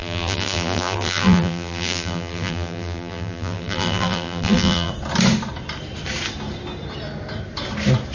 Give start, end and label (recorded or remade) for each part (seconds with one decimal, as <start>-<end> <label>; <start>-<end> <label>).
0.0-4.9 remade; 4.9-8.1 recorded